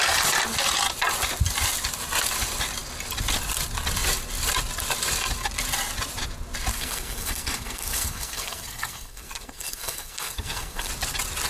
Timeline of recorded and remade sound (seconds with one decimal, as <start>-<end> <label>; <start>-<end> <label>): 0.0-6.7 recorded; 6.7-10.9 remade; 10.9-11.5 recorded